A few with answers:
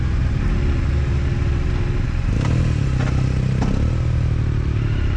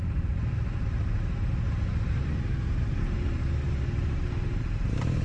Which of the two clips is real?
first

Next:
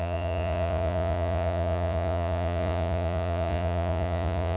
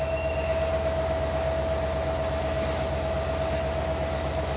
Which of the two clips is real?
second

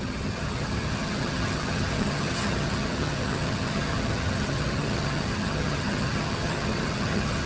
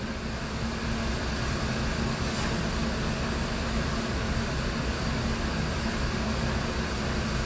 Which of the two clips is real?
second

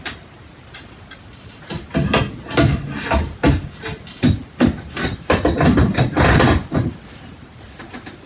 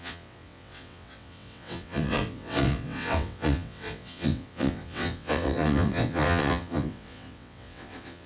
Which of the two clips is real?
first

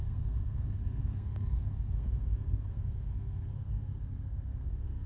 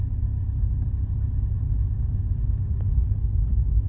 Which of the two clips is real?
second